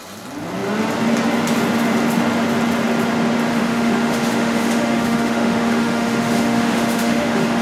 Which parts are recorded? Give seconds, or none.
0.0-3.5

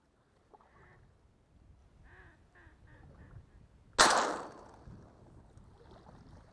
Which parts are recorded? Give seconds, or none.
0.0-6.5